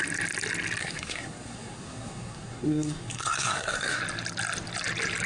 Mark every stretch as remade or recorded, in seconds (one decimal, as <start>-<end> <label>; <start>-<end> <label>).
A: 0.0-0.8 recorded; 0.8-4.0 remade; 4.0-5.3 recorded